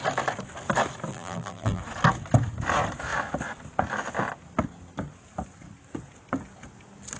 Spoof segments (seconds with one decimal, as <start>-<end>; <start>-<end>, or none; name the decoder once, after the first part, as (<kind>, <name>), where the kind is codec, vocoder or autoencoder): 1.1-1.8 (vocoder, BigVGAN v2)